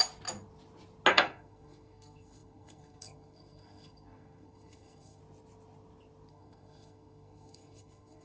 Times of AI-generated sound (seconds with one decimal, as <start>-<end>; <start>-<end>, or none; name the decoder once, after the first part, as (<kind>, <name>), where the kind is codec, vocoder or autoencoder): 1.1-5.2 (codec, SNAC); 6.3-8.2